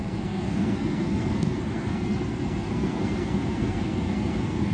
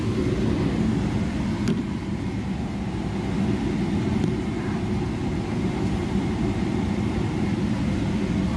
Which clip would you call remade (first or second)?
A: first